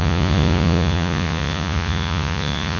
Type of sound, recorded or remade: remade